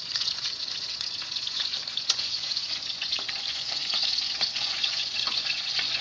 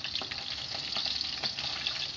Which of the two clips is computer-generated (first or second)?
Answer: first